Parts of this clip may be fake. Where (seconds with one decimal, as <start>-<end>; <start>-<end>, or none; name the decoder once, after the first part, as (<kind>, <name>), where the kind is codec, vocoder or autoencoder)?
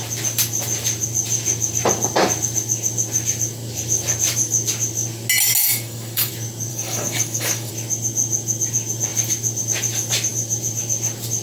5.6-6.3 (codec, DAC); 6.7-7.7